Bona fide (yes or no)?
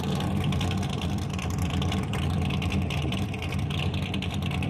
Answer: no